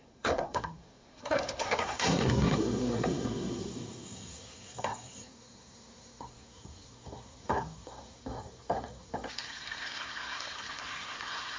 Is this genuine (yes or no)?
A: no